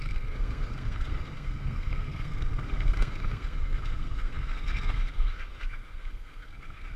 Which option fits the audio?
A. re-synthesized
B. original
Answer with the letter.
A